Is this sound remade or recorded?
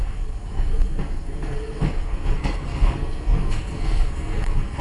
remade